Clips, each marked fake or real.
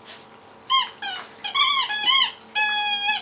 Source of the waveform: real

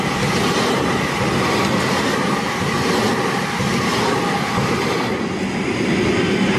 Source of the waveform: real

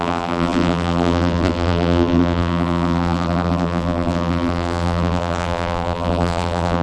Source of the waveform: fake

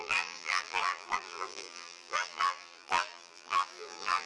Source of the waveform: fake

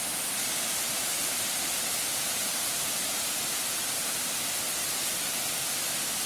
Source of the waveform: fake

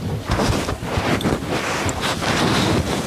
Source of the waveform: fake